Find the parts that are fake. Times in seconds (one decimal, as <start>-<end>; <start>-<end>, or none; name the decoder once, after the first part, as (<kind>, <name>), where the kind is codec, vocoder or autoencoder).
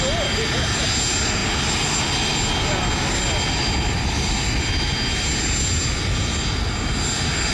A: none